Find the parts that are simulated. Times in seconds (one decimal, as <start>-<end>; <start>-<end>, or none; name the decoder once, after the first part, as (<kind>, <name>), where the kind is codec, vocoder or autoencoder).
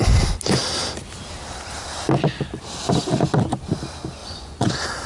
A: 4.2-5.1 (vocoder, Vocos)